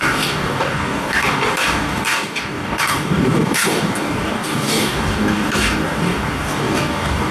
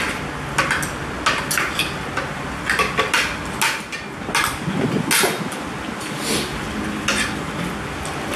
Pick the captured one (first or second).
second